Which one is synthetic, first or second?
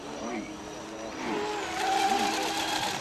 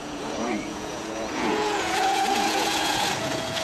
second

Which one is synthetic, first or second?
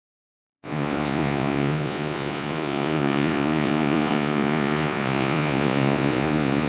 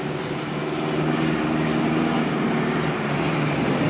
first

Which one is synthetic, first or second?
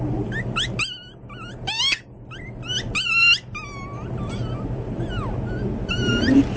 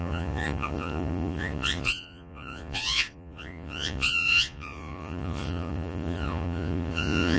second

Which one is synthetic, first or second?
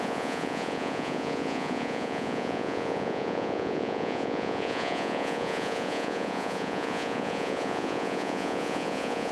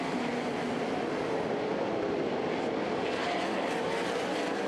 first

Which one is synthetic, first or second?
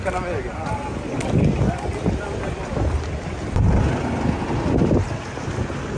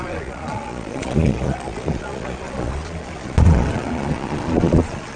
second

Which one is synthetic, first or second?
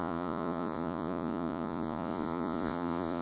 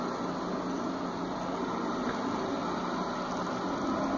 first